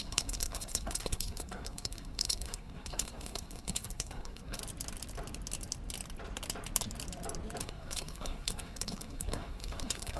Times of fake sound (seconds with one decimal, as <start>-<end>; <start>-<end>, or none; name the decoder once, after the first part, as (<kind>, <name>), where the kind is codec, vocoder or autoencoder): 0.0-4.6 (codec, SNAC); 7.6-10.2